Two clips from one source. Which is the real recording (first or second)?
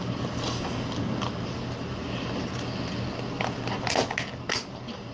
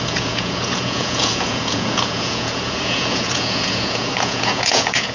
first